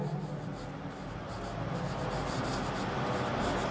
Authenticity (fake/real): real